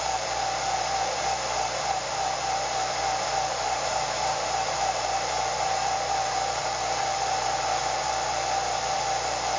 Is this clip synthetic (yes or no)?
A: yes